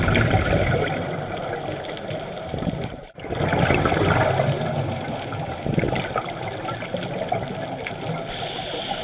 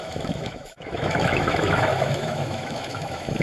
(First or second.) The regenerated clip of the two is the second